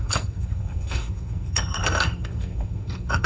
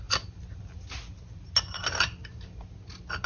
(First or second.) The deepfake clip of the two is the first